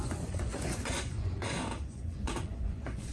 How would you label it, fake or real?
fake